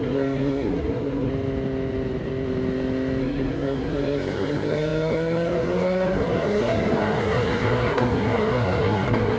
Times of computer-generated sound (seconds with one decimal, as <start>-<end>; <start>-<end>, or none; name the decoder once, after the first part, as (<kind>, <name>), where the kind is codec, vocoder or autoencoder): 0.0-1.3 (codec, SNAC); 3.2-9.4